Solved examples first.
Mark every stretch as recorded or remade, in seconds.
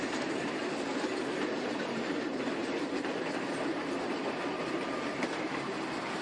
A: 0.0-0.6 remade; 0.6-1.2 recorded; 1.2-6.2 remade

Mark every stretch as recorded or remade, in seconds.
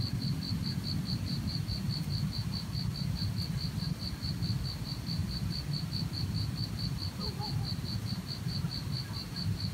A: 0.0-9.7 recorded